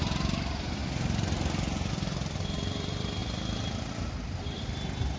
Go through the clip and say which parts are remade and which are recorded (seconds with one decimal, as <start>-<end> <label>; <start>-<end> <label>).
0.0-0.8 remade; 0.8-1.9 recorded; 1.9-3.2 remade; 3.2-3.9 recorded; 3.9-5.2 remade